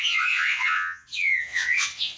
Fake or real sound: fake